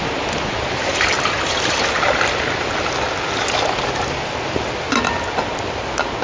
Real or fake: real